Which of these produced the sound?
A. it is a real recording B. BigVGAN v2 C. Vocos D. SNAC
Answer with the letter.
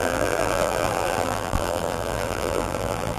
B